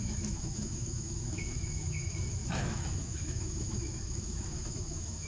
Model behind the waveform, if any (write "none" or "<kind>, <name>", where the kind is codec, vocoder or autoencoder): autoencoder, DAC-VAE